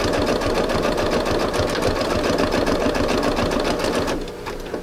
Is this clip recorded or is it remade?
recorded